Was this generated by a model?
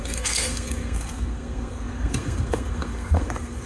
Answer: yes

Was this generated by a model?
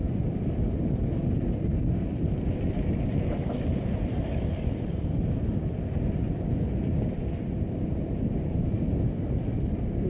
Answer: no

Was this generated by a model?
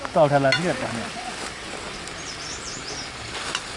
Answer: no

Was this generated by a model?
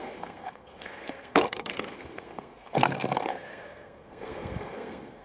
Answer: yes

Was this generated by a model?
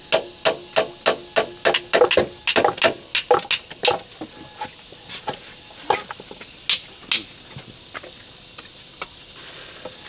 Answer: no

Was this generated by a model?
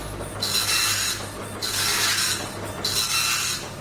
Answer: no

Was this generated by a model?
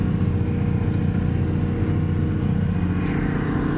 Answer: no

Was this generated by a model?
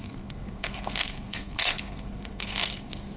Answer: yes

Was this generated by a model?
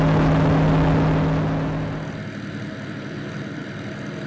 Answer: no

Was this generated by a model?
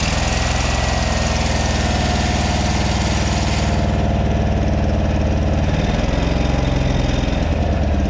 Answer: no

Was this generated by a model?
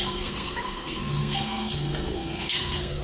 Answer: yes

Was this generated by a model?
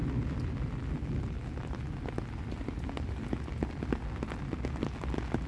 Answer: no